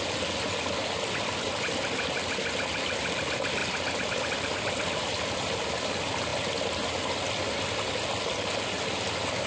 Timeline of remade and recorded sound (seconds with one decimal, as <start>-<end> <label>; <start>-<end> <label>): 0.0-9.5 recorded